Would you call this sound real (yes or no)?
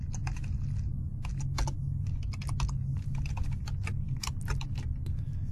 yes